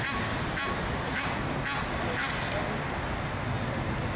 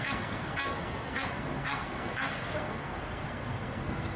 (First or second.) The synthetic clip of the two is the second